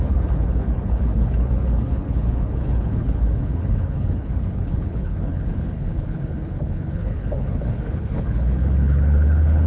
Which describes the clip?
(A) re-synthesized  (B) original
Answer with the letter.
A